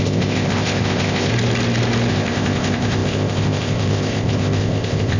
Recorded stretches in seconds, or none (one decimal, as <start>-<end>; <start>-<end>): 1.3-2.1